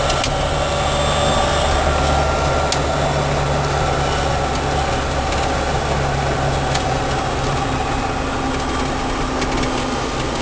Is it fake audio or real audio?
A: real